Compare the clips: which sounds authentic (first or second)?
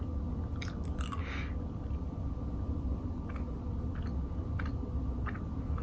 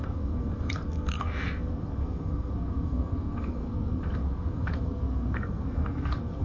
first